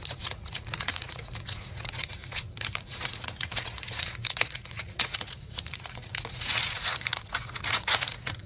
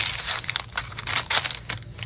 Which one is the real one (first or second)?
second